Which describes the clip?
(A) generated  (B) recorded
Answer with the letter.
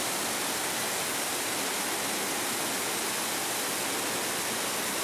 B